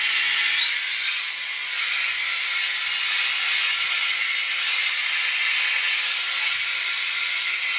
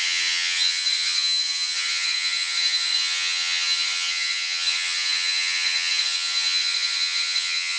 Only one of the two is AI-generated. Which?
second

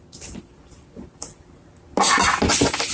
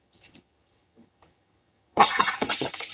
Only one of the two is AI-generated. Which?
second